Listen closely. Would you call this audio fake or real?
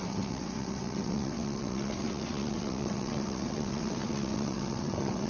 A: fake